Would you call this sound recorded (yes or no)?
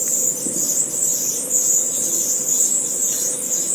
yes